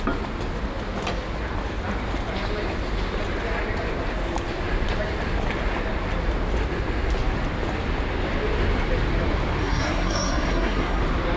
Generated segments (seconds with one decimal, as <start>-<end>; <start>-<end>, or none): 9.6-11.0